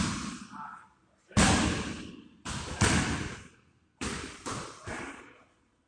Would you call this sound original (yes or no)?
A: no